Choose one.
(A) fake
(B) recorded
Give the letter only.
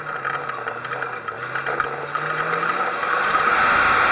B